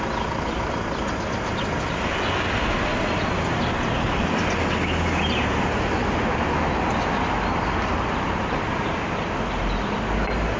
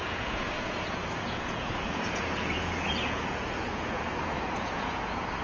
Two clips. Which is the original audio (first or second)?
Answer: first